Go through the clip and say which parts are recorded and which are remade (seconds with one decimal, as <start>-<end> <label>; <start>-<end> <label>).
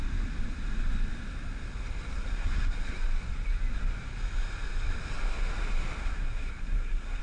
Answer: 0.0-2.1 recorded; 2.1-3.0 remade; 3.0-6.0 recorded; 6.0-7.2 remade